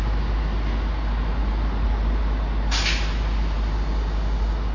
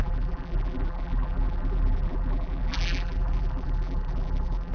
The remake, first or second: second